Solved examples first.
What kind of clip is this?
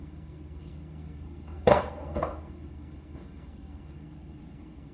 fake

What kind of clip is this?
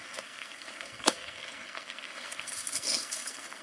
fake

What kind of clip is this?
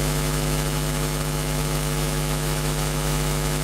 fake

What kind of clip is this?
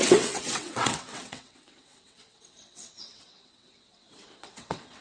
fake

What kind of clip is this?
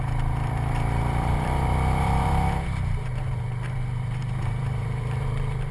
fake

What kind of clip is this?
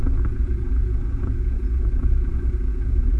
fake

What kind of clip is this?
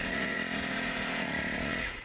fake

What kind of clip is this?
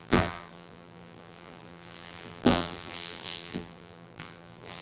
fake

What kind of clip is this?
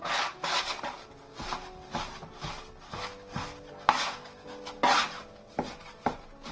real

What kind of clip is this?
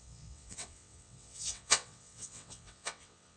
fake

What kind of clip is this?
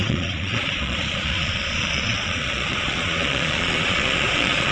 fake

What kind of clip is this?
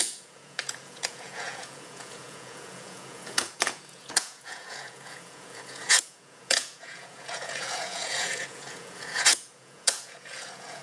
fake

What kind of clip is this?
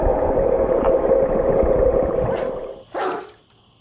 real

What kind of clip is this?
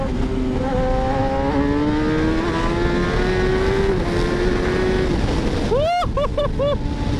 real